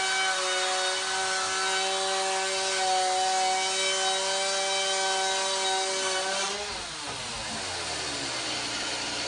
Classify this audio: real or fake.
real